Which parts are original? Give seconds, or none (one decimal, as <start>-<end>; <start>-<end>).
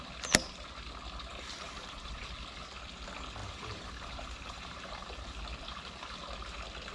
0.0-1.3; 2.3-3.4; 5.4-6.9